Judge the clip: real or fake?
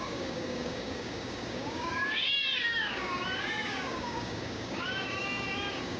fake